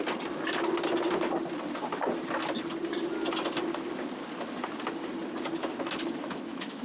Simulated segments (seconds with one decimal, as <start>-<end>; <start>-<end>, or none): 6.2-6.8